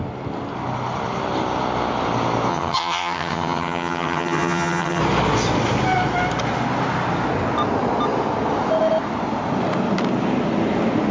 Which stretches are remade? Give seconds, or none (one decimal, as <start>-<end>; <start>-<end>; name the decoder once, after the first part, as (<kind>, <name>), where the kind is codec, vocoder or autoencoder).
2.5-5.0 (vocoder, HiFi-GAN)